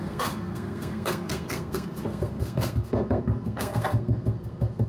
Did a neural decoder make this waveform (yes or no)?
yes